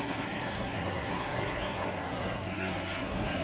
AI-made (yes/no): yes